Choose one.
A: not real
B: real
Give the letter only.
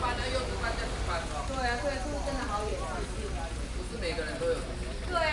B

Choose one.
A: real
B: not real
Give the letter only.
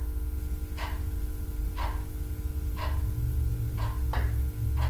A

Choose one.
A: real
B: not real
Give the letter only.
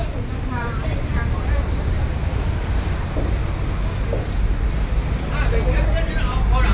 A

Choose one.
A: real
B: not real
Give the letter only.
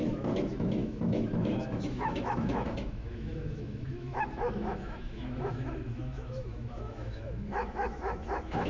B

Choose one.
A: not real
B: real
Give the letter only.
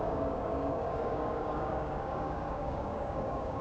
A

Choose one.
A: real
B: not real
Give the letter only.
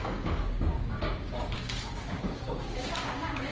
B